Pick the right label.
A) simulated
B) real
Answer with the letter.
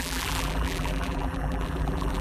A